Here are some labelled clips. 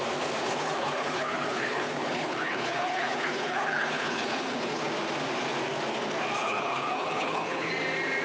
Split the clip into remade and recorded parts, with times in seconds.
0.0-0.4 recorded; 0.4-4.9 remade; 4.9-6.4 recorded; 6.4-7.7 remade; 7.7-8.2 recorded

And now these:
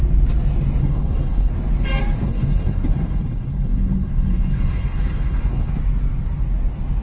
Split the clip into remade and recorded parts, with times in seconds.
0.0-0.8 recorded; 0.8-1.5 remade; 1.5-2.2 recorded; 2.2-5.7 remade; 5.7-7.0 recorded

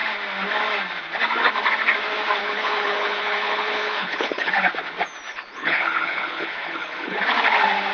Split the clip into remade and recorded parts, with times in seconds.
0.0-2.4 recorded; 2.4-4.5 remade; 4.5-5.3 recorded; 5.3-7.2 remade; 7.2-7.9 recorded

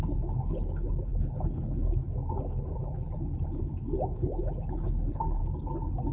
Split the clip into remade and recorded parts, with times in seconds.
0.0-5.4 remade; 5.4-6.1 recorded

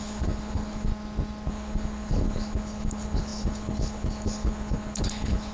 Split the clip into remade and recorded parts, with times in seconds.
0.0-0.9 remade; 0.9-1.5 recorded; 1.5-5.5 remade

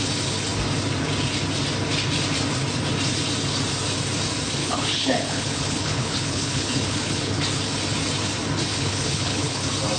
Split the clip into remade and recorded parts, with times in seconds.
0.0-4.6 recorded; 4.6-7.4 remade; 7.4-8.7 recorded; 8.7-9.6 remade; 9.6-10.0 recorded